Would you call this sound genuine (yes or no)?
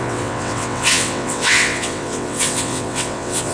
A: no